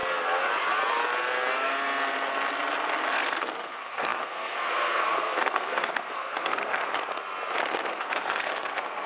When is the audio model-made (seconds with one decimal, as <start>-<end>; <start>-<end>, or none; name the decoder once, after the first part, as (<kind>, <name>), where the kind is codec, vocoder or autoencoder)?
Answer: 3.1-6.8 (codec, SNAC); 7.9-9.1